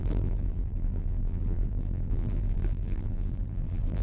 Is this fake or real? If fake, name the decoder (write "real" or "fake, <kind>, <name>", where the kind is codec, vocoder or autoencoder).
fake, vocoder, BigVGAN v2